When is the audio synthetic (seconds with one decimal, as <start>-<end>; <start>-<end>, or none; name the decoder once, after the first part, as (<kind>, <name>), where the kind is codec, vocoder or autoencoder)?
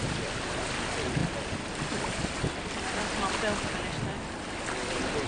1.2-4.4 (vocoder, BigVGAN v2)